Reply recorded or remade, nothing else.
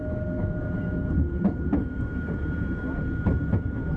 recorded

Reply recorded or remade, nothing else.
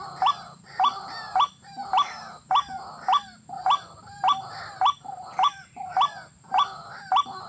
recorded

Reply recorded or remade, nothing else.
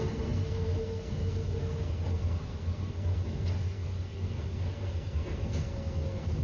remade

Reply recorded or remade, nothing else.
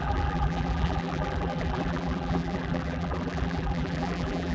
remade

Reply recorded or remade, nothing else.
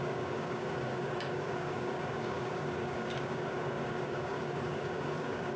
remade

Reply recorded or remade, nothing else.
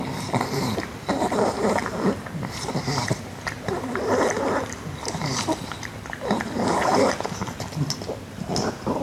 remade